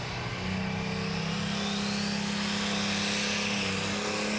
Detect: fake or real real